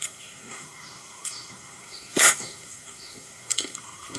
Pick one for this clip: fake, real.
fake